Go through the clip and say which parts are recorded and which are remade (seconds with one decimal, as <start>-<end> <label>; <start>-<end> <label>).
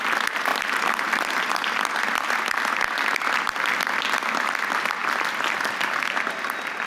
0.0-0.5 recorded; 0.5-1.8 remade; 1.8-5.0 recorded; 5.0-6.0 remade; 6.0-6.9 recorded